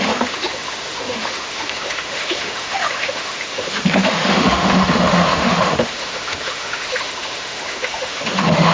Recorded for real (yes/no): no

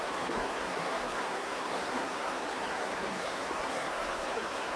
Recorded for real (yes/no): no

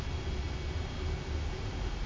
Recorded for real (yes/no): yes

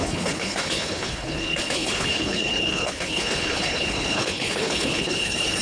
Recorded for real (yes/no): no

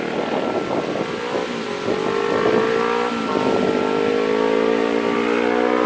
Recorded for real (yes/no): yes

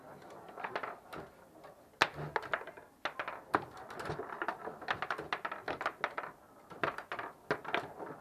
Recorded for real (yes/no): yes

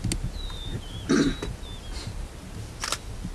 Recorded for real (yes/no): yes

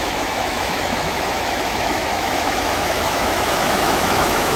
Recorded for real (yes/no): no